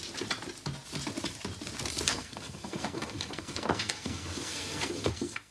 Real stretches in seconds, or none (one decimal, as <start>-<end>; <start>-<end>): 0.0-2.1